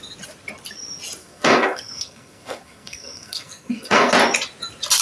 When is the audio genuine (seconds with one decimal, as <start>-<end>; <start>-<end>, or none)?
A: 0.0-1.2; 4.1-5.0